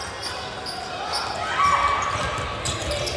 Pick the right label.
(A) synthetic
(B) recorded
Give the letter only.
B